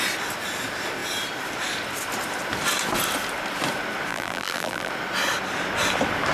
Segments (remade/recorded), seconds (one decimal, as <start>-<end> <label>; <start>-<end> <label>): 0.0-4.1 recorded; 4.1-4.9 remade; 4.9-6.3 recorded